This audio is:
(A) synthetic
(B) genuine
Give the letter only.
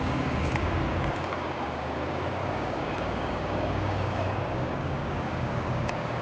A